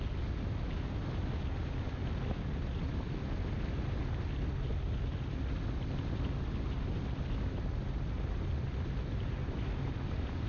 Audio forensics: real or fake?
real